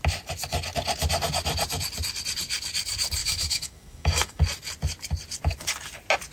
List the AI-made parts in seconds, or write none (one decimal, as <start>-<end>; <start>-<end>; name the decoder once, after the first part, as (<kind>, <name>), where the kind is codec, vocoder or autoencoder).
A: 3.2-4.4 (autoencoder, DAC-VAE)